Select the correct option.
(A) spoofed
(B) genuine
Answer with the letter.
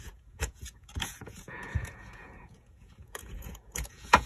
A